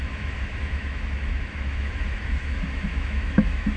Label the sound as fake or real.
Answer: fake